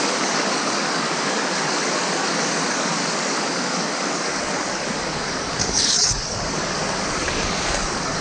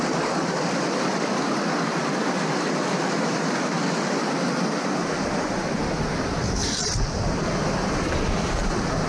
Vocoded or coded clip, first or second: first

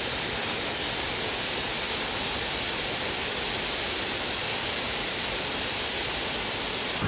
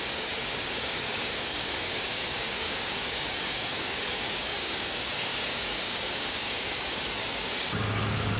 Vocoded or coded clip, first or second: second